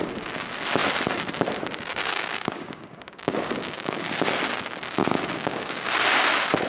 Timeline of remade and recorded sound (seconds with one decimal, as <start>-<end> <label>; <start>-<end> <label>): 0.0-2.0 recorded; 2.0-4.4 remade; 4.4-5.0 recorded; 5.0-5.9 remade; 5.9-6.7 recorded